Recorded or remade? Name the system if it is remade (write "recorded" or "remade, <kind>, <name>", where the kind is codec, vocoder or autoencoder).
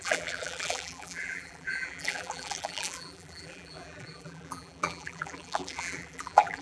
remade, vocoder, BigVGAN v2